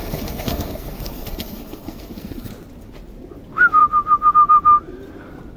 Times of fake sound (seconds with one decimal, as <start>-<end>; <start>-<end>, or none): 0.0-2.5